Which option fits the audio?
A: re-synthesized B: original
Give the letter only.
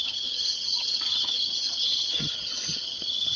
A